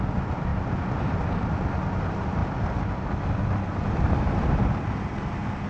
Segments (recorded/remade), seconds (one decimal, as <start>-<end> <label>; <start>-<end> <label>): 0.0-5.7 recorded